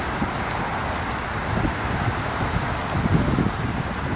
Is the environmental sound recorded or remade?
recorded